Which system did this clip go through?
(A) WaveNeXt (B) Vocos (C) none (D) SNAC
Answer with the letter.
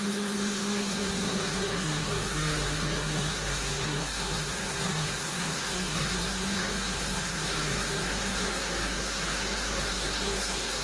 D